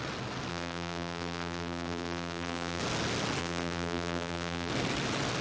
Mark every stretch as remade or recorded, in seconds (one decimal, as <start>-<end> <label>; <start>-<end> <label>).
0.0-0.5 recorded; 0.5-2.8 remade; 2.8-3.4 recorded; 3.4-4.7 remade; 4.7-5.4 recorded